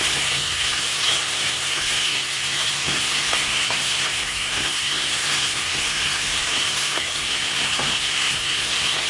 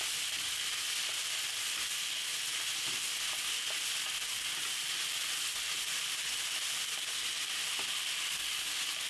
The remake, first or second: first